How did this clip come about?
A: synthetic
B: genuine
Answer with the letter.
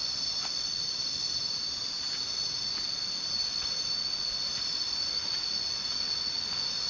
B